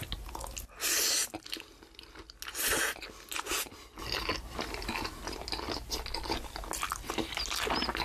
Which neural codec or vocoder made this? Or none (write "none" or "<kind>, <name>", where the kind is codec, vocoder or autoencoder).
none